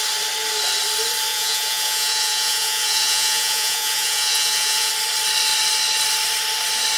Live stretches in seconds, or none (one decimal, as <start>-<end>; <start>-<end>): 0.0-1.3; 4.9-7.0